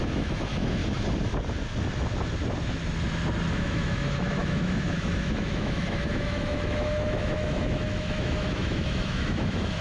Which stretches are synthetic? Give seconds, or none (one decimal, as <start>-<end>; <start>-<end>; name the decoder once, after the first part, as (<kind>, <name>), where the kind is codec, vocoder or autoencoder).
0.0-0.8 (autoencoder, DAC-VAE); 3.5-9.8